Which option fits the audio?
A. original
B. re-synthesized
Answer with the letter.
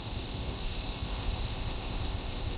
B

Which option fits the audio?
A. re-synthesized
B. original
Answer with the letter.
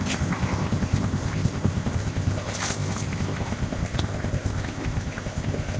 A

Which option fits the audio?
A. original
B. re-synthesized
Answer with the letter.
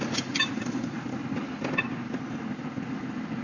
A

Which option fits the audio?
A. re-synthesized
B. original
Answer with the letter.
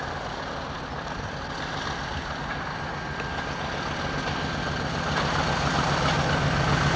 B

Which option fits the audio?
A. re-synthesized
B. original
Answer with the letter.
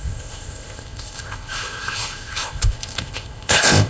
A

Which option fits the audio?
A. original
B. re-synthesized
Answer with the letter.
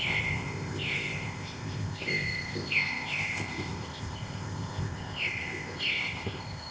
B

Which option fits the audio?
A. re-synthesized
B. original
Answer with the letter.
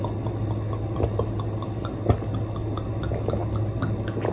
B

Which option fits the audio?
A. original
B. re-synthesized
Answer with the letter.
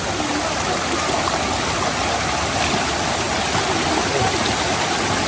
A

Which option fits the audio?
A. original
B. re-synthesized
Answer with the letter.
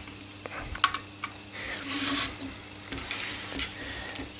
A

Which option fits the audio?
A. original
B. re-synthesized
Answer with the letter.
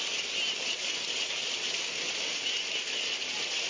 A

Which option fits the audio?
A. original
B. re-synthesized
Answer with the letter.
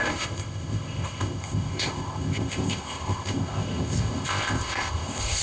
B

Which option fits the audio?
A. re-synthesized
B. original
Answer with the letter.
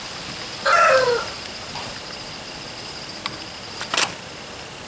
B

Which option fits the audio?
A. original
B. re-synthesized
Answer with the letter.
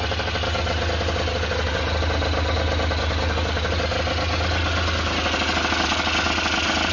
A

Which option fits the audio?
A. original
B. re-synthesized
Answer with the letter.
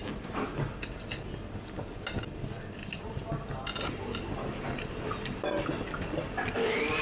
A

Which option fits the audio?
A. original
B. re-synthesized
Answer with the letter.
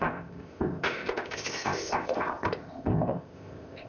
B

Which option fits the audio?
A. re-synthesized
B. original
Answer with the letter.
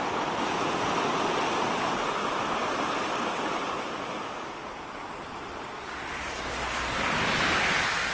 B